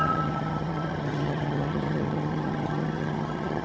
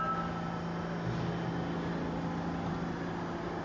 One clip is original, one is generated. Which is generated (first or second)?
first